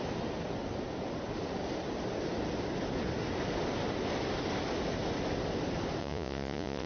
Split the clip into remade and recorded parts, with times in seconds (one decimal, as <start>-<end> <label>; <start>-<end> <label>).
0.0-6.0 recorded; 6.0-6.9 remade